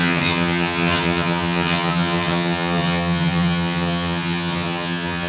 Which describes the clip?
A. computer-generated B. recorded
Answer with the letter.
A